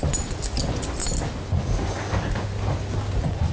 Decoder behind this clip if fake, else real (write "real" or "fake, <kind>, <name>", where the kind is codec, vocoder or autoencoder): real